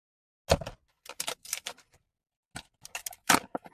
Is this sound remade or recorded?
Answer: recorded